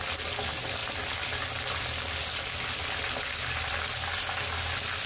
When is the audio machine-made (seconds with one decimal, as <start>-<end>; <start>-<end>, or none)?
none